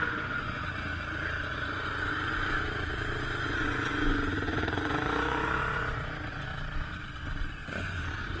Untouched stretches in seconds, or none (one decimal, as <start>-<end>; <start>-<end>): 0.7-1.4; 6.5-7.5